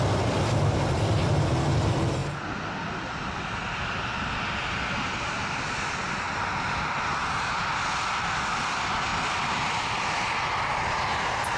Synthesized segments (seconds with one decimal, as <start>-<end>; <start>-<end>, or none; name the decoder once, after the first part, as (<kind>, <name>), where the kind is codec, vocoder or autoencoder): none